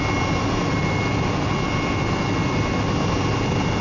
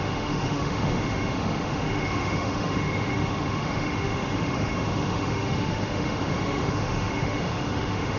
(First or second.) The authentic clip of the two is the first